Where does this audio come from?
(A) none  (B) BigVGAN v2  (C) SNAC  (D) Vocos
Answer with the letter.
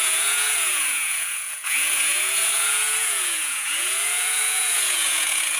D